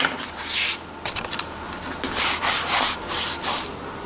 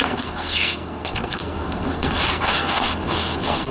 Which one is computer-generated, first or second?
second